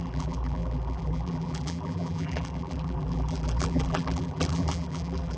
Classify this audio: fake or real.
fake